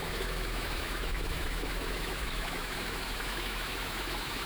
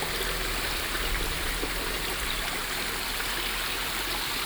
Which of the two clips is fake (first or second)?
first